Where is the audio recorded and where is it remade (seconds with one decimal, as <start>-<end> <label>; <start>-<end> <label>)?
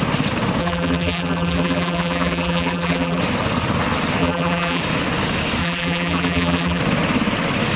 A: 0.0-0.6 recorded; 0.6-3.2 remade; 3.2-4.2 recorded; 4.2-4.8 remade; 4.8-5.6 recorded; 5.6-6.8 remade; 6.8-7.8 recorded